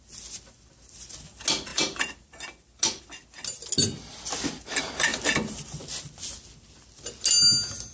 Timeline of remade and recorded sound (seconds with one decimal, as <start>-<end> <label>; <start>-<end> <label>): 0.0-7.9 recorded